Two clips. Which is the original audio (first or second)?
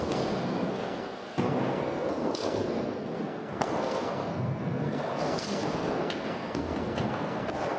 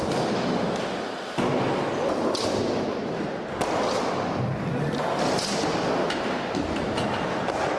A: second